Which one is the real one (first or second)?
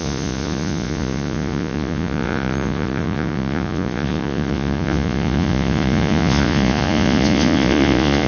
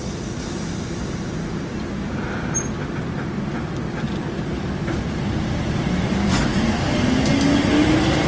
second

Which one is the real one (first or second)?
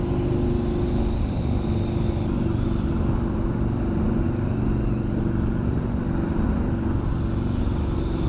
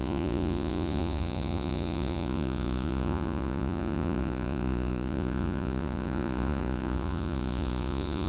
first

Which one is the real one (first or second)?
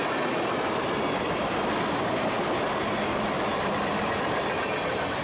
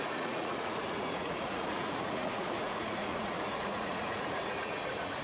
first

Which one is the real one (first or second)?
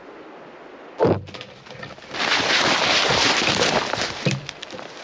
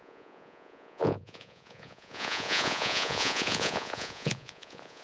first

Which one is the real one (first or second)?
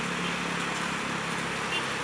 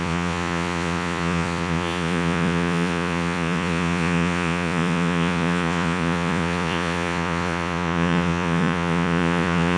first